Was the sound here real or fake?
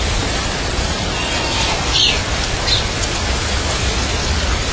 real